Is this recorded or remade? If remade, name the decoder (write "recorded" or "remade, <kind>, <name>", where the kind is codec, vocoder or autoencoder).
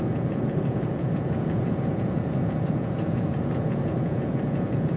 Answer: remade, vocoder, Vocos